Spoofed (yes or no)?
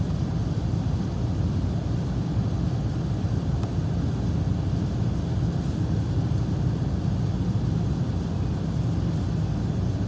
no